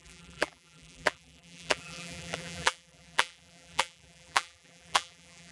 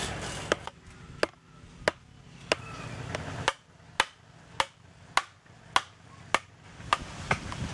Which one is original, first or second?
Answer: second